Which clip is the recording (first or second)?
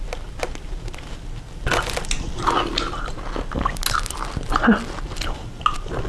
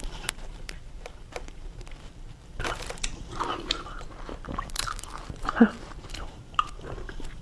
first